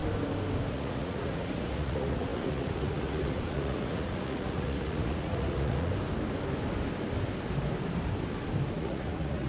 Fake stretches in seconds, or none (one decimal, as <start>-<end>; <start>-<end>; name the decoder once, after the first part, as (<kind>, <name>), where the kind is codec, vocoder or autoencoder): 0.7-5.9 (vocoder, Vocos); 8.8-9.5